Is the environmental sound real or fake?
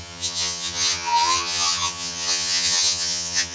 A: fake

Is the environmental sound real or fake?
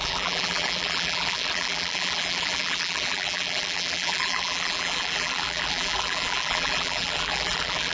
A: fake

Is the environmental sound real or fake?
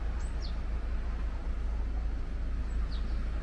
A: real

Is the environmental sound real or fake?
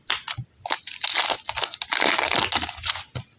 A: real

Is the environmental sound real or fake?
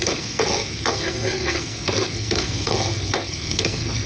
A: fake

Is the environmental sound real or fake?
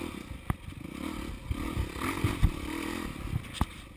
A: real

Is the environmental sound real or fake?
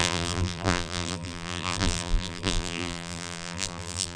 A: fake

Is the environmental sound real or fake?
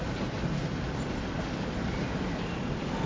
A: real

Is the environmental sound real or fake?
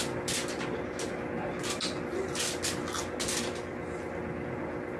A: real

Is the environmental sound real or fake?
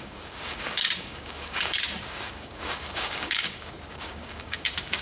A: fake